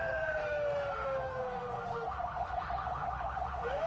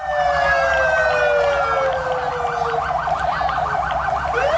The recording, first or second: second